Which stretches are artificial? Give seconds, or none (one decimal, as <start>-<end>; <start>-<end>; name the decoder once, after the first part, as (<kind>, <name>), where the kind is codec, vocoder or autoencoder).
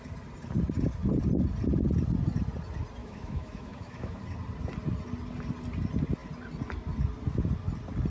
3.0-4.2 (autoencoder, DAC-VAE)